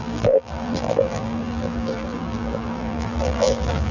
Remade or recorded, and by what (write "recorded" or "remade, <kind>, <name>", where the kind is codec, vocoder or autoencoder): remade, vocoder, BigVGAN v2